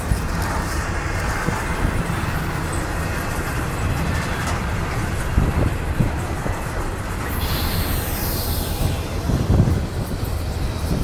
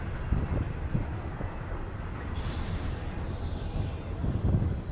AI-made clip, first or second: first